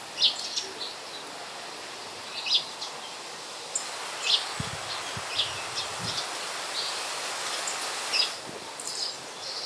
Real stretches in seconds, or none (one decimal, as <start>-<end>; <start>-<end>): 0.0-9.7